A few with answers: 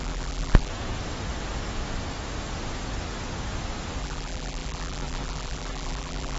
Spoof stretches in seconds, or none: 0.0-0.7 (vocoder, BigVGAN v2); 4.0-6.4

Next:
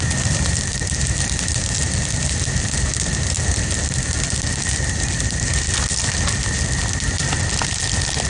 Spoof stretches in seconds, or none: none

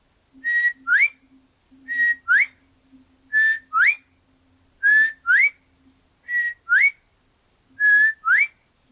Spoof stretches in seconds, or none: none

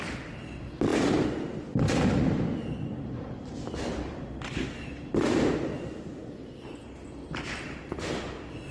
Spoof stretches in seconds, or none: none

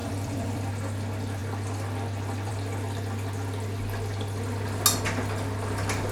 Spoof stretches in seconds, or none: 0.0-0.7 (vocoder, BigVGAN v2)

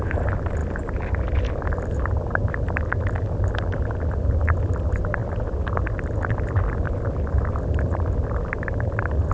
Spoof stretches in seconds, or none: none